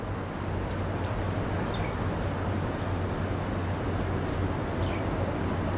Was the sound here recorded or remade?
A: recorded